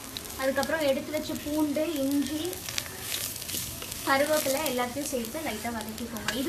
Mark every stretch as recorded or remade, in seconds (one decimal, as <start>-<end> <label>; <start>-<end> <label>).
0.0-0.7 remade; 0.7-1.8 recorded; 1.8-4.4 remade; 4.4-4.9 recorded; 4.9-5.5 remade; 5.5-6.5 recorded